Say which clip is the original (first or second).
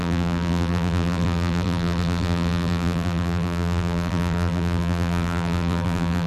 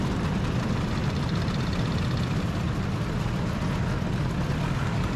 second